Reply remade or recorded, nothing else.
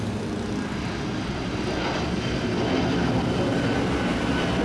recorded